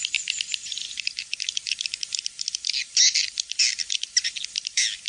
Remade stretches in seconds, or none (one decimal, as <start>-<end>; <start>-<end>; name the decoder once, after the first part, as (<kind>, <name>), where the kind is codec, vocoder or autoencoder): 0.0-5.1 (vocoder, BigVGAN v2)